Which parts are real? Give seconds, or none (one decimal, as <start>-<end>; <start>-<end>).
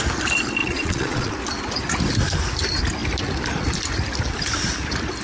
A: 0.0-0.6; 1.3-5.2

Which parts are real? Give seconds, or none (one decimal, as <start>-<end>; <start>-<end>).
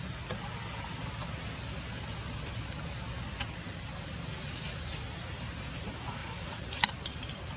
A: 0.0-6.2; 6.7-7.6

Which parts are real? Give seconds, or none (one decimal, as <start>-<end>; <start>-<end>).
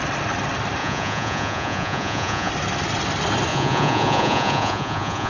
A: 0.0-0.8; 2.5-3.5